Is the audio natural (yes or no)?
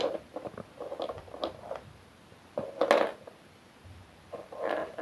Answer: yes